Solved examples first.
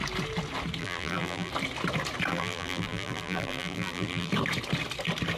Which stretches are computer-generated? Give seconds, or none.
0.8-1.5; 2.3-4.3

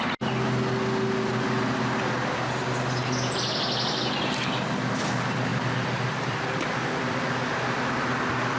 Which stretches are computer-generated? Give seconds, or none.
5.5-7.3

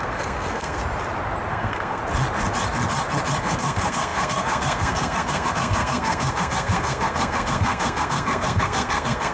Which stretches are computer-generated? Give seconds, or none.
0.0-0.8; 1.5-2.0; 3.4-9.3

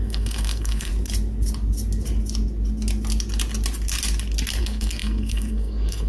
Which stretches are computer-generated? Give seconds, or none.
0.0-0.9; 4.6-6.1

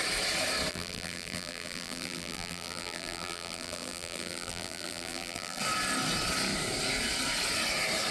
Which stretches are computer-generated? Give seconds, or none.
0.7-5.6

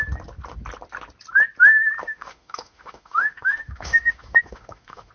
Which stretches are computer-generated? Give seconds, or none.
2.0-5.1